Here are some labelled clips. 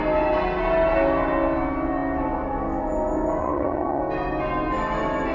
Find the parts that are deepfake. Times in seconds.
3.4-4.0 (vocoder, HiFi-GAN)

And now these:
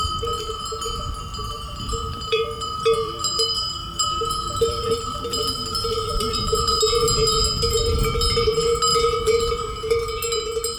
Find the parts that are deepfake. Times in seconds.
1.3-6.4 (vocoder, BigVGAN v2); 8.9-9.5

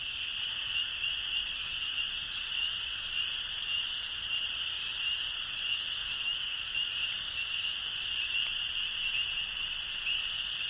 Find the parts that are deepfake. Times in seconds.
6.0-6.9 (autoencoder, DAC-VAE)